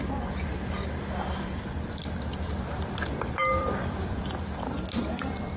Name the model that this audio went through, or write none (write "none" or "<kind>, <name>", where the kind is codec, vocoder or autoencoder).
vocoder, BigVGAN v2